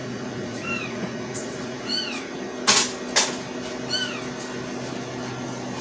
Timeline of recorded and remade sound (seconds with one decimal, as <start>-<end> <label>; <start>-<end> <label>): 0.0-2.4 remade; 2.4-5.8 recorded